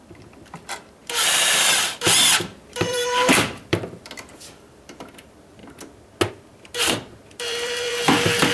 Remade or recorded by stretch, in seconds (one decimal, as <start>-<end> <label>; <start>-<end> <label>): 0.0-5.6 remade; 5.6-6.3 recorded; 6.3-8.5 remade